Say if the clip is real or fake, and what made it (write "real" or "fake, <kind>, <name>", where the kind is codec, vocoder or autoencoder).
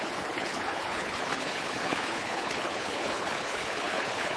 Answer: fake, codec, HILCodec